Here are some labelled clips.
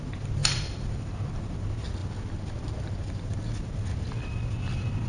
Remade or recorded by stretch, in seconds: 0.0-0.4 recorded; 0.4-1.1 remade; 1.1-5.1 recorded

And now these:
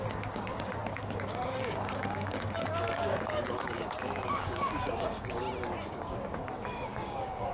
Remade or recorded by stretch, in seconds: 0.0-5.4 remade; 5.4-5.9 recorded; 5.9-7.5 remade

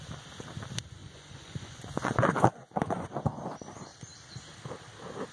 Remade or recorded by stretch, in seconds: 0.0-1.0 recorded; 1.0-3.4 remade; 3.4-5.3 recorded

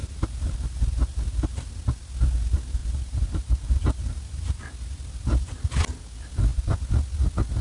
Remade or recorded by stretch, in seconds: 0.0-1.7 remade; 1.7-2.8 recorded; 2.8-4.6 remade; 4.6-7.6 recorded